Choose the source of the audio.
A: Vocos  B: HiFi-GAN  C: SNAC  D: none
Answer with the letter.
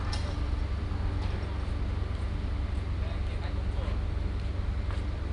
D